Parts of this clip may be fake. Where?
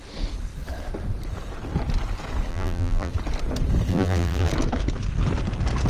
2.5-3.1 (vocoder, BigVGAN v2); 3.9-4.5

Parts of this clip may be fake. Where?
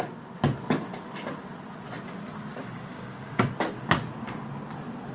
2.5-3.5 (codec, DAC)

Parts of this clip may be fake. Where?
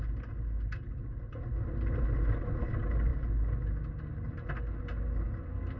none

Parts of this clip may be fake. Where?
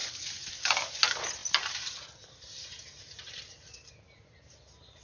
none